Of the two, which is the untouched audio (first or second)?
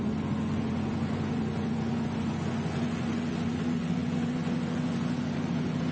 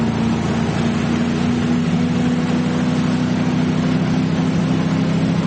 second